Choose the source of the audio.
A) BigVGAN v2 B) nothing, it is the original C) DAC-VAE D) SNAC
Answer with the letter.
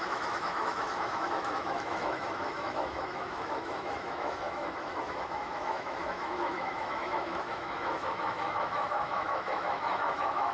C